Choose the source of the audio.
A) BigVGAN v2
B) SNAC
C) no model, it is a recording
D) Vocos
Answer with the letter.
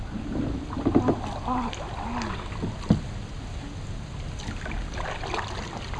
C